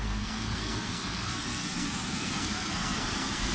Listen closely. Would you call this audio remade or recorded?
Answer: remade